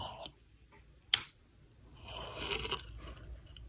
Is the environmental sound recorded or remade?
recorded